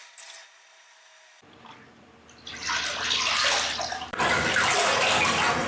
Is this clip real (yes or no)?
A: yes